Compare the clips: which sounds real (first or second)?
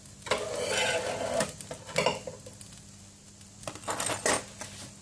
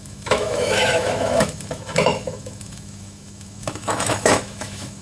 first